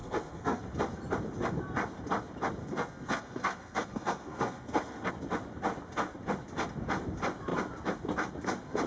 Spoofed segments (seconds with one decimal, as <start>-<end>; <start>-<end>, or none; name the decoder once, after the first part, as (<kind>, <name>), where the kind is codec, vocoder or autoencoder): 0.0-0.6 (codec, SNAC); 2.6-5.1

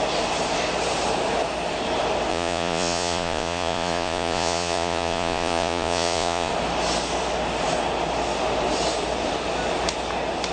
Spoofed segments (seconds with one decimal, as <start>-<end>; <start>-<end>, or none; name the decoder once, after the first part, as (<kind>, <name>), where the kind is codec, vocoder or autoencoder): 2.3-6.5 (vocoder, Vocos)

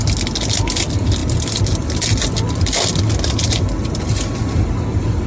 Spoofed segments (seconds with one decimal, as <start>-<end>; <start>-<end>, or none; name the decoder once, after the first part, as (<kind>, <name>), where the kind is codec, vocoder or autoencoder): none

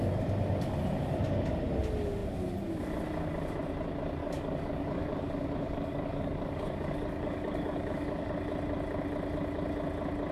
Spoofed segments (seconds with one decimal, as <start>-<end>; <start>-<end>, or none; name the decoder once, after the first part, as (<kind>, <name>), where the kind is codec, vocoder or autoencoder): 4.2-8.3 (codec, DAC)

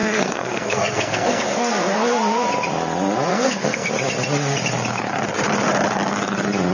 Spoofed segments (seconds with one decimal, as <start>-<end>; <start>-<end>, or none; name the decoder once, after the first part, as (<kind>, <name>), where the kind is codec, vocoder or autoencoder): 0.0-1.7 (codec, SNAC); 3.3-3.9